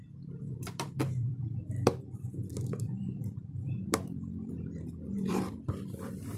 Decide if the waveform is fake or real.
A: fake